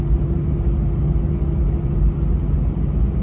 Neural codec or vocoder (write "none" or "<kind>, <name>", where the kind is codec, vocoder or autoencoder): none